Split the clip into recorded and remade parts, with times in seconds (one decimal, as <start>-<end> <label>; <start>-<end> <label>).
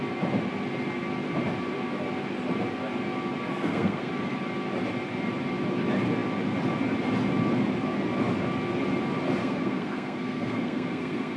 0.0-3.5 recorded; 3.5-4.1 remade; 4.1-9.4 recorded; 9.4-11.4 remade